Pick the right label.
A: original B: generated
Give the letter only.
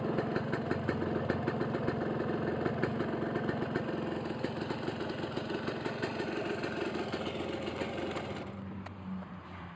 A